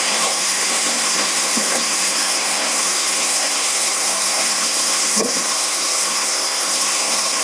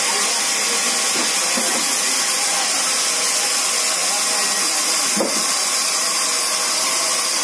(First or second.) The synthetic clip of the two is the first